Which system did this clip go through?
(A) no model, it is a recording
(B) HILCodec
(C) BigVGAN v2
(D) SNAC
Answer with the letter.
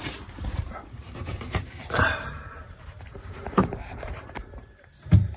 C